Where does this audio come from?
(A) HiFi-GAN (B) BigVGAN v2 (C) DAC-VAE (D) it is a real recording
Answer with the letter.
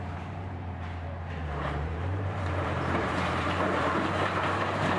B